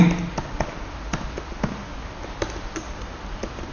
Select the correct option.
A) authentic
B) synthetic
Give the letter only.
A